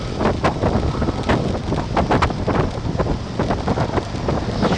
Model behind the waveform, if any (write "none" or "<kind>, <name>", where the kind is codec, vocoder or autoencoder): none